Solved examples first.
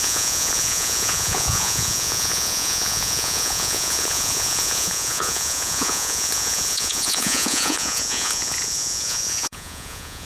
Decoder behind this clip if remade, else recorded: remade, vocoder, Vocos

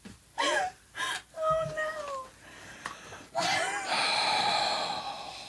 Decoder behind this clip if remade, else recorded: recorded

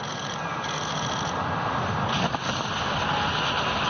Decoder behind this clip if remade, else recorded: recorded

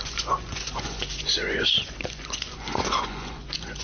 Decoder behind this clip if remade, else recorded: remade, vocoder, Vocos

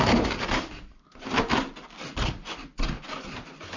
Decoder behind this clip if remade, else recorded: recorded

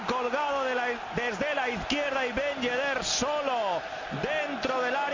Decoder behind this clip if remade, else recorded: recorded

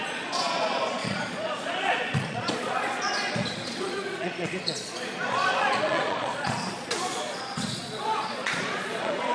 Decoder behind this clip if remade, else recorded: remade, vocoder, Vocos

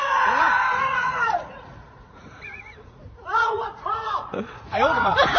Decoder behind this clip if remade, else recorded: remade, vocoder, Vocos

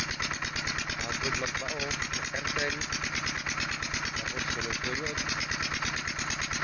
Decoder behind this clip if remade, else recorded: recorded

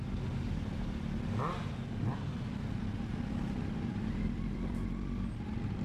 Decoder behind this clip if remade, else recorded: recorded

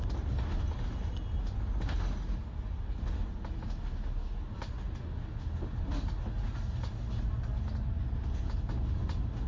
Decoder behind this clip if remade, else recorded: recorded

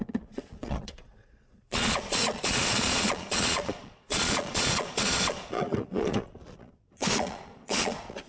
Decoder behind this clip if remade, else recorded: remade, vocoder, Vocos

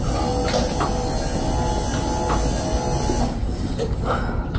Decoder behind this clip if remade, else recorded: recorded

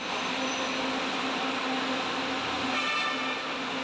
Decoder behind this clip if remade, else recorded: recorded